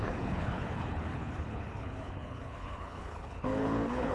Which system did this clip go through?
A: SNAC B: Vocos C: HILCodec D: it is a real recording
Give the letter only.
C